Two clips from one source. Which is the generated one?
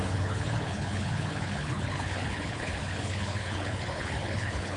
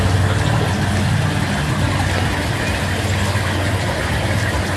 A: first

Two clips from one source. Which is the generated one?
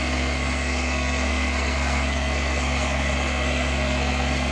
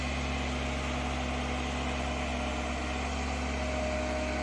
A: first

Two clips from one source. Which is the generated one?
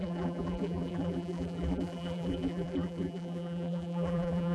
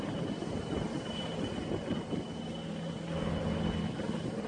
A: first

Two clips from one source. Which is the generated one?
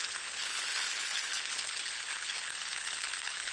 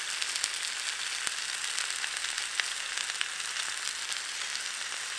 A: first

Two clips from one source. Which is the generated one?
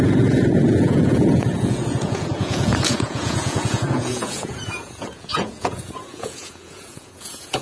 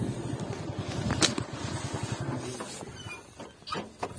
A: first